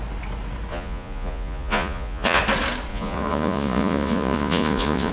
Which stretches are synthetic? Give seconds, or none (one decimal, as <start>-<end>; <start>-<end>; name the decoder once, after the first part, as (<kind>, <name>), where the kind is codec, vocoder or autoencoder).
0.7-2.4 (vocoder, Vocos); 2.9-5.1